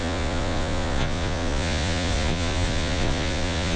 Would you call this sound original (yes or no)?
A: no